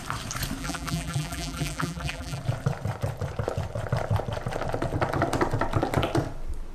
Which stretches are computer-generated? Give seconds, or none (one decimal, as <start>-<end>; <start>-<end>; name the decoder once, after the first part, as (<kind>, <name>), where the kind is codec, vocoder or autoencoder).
0.6-2.4 (vocoder, BigVGAN v2)

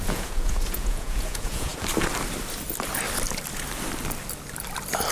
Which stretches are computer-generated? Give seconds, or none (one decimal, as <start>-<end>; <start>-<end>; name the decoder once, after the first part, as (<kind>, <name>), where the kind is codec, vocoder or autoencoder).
0.0-1.7 (vocoder, Vocos)

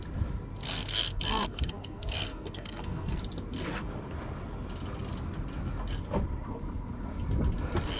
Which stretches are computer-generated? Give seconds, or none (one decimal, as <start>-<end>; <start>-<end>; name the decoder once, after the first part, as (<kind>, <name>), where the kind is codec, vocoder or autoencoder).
0.6-3.2 (codec, SNAC)

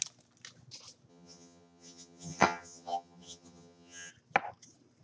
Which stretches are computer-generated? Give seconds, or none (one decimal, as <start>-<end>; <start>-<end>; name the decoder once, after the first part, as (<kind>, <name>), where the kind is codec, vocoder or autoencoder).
1.1-4.1 (vocoder, HiFi-GAN)